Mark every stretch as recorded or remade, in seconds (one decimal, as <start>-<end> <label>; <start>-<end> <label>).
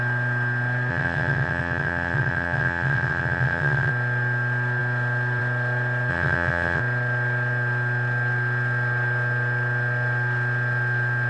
0.0-0.9 recorded; 0.9-3.9 remade; 3.9-6.1 recorded; 6.1-6.8 remade; 6.8-11.3 recorded